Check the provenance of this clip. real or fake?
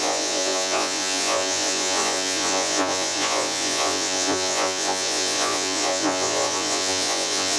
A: fake